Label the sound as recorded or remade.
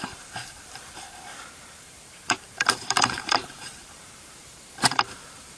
remade